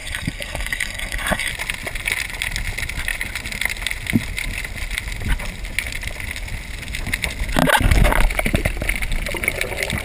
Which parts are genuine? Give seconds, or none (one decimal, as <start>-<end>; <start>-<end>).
1.5-10.0